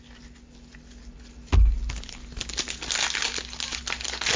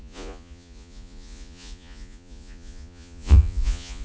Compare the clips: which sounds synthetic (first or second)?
second